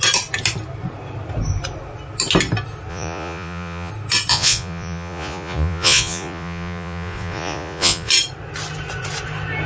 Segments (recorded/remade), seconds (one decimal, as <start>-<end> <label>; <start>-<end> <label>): 0.0-2.9 recorded; 2.9-3.9 remade; 3.9-4.3 recorded; 4.3-8.1 remade; 8.1-9.7 recorded

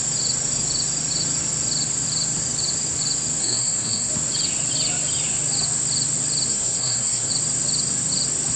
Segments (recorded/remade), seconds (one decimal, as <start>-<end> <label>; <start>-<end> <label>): 0.0-3.4 recorded; 3.4-4.1 remade; 4.1-6.5 recorded; 6.5-7.3 remade; 7.3-8.6 recorded

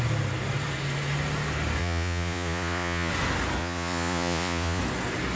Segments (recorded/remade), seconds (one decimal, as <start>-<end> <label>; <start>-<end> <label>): 0.0-1.8 recorded; 1.8-3.1 remade; 3.1-3.6 recorded; 3.6-4.8 remade; 4.8-5.4 recorded